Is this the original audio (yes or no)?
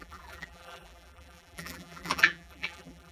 no